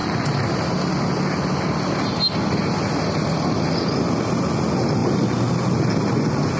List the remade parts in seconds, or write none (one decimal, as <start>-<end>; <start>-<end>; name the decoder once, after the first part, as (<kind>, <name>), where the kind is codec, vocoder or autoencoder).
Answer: 0.0-0.7 (vocoder, BigVGAN v2); 5.0-5.8